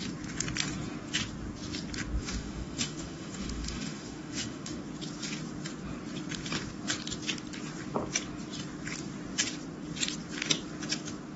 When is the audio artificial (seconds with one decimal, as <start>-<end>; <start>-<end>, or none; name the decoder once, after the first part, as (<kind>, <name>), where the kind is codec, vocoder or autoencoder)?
2.2-4.8 (autoencoder, DAC-VAE)